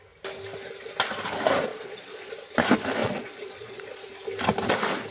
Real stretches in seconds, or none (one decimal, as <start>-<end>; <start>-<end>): 0.0-1.7; 2.3-3.0; 4.1-5.1